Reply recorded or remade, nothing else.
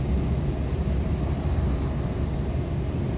recorded